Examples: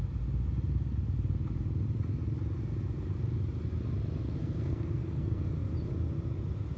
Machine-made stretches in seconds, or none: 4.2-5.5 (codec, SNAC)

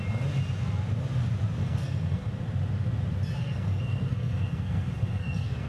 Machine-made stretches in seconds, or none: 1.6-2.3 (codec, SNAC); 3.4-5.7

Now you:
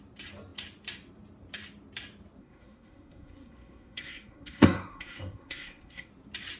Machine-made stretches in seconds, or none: 2.4-6.1 (codec, SNAC)

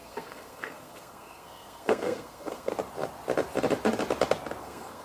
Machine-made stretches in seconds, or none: 0.0-2.7 (codec, SNAC); 4.6-5.0